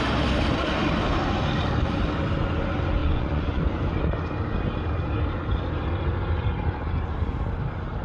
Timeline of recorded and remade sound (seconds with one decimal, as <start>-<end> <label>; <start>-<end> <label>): 0.0-3.0 recorded; 3.0-3.6 remade; 3.6-8.0 recorded